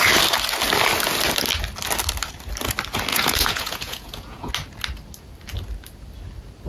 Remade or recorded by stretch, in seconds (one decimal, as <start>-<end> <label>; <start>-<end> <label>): 0.0-3.1 recorded; 3.1-4.5 remade; 4.5-6.7 recorded